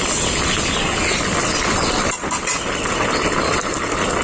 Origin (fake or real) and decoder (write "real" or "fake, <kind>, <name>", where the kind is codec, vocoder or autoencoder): real